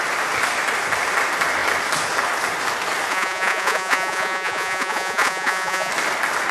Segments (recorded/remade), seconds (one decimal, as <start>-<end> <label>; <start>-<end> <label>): 0.0-3.1 recorded; 3.1-5.9 remade; 5.9-6.5 recorded